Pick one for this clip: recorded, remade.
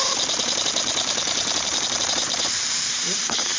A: remade